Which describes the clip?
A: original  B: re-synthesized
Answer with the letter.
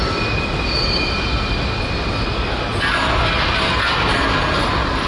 A